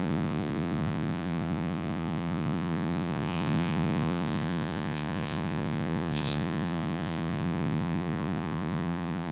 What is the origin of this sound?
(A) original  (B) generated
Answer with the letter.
B